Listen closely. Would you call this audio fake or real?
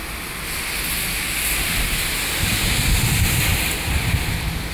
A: real